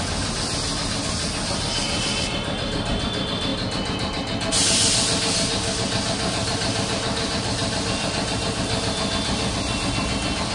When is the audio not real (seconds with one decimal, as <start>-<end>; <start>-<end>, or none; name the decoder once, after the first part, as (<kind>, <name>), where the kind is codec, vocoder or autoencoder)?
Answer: none